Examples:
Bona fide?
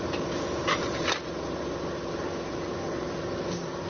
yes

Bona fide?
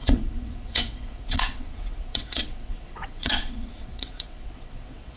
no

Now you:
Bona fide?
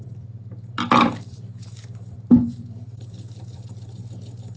no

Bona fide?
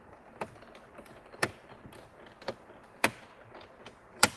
no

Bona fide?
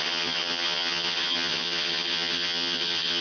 no